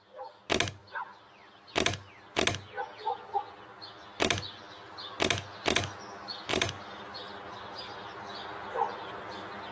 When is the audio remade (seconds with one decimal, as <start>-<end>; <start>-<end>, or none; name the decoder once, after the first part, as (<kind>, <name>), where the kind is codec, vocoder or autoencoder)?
6.5-9.2 (vocoder, BigVGAN v2)